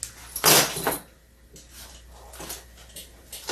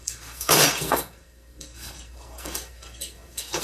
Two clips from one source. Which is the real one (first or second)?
first